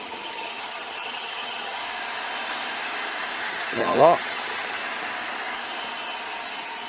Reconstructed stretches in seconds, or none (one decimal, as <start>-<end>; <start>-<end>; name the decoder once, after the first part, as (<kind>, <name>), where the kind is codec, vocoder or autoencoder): 0.0-1.8 (vocoder, HiFi-GAN); 3.4-4.8